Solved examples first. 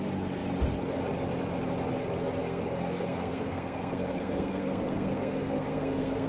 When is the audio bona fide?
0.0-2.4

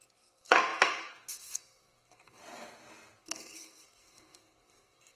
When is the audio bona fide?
2.4-3.2